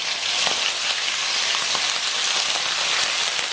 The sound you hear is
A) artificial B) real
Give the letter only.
B